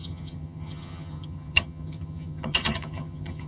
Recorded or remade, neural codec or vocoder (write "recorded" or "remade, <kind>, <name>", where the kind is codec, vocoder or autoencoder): remade, vocoder, HiFi-GAN